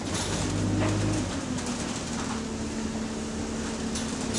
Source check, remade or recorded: recorded